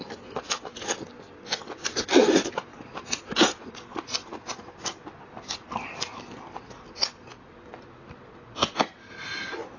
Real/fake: real